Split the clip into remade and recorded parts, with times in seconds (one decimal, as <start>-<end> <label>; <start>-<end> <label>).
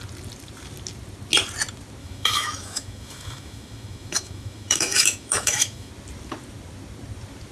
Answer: 0.0-2.0 recorded; 2.0-5.9 remade; 5.9-7.5 recorded